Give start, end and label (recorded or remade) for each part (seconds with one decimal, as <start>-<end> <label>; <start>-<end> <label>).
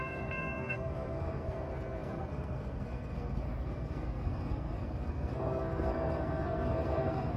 0.0-7.4 remade